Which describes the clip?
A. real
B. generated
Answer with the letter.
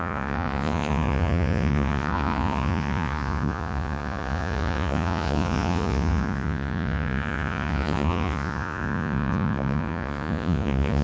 B